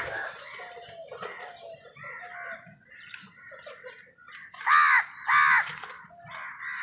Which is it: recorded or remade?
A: recorded